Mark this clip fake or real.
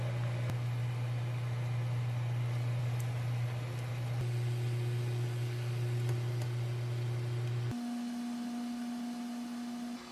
real